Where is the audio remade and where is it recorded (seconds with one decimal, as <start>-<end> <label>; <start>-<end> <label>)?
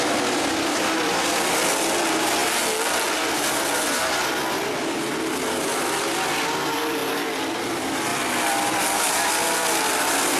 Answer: 0.0-10.4 recorded